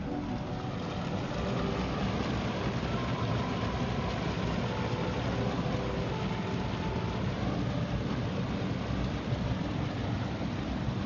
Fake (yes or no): no